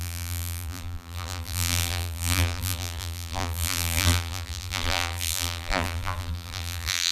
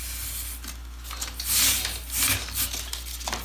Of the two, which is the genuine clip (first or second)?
second